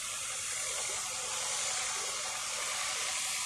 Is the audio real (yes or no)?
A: no